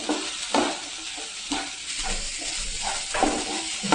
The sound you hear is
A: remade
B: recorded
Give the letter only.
B